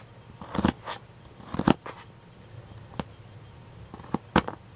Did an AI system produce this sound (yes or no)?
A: no